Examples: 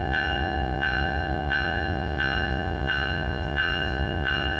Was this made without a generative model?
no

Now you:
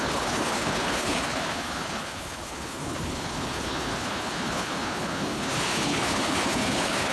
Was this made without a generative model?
no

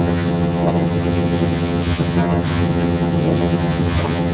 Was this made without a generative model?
no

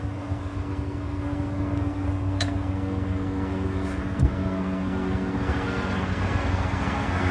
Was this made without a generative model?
no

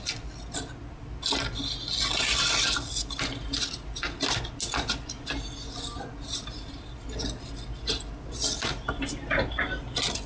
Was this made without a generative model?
yes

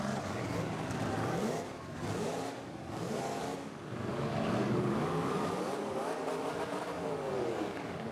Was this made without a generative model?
no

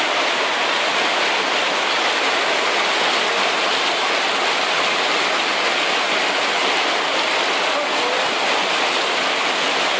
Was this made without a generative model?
yes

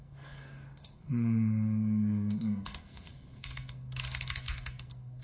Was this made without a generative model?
no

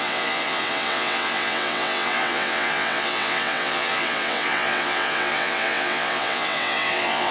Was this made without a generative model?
no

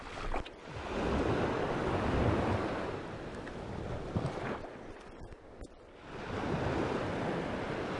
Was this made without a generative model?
yes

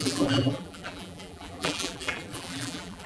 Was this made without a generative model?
no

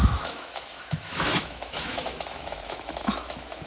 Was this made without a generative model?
no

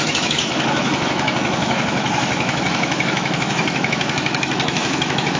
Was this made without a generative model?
no